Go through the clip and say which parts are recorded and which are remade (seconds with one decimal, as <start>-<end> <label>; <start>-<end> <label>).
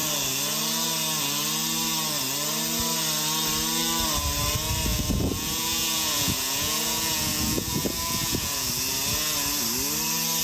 0.0-4.9 recorded; 4.9-8.7 remade; 8.7-10.4 recorded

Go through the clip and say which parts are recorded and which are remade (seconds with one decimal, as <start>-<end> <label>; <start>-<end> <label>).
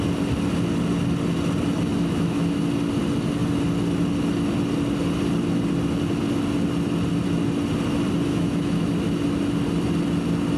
0.0-1.9 recorded; 1.9-2.6 remade; 2.6-8.3 recorded; 8.3-8.9 remade; 8.9-10.6 recorded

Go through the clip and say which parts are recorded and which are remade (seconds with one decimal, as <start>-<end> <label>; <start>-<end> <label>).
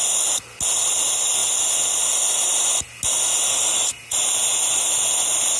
0.0-5.6 recorded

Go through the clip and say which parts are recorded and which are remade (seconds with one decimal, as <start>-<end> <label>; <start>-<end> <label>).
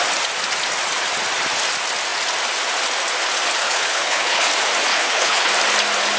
0.0-3.6 recorded; 3.6-4.5 remade; 4.5-4.9 recorded; 4.9-5.5 remade; 5.5-6.2 recorded